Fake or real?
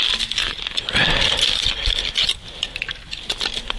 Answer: real